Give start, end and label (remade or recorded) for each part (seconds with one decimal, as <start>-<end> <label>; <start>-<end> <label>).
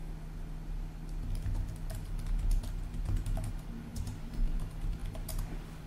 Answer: 0.0-3.9 recorded; 3.9-4.6 remade; 4.6-5.9 recorded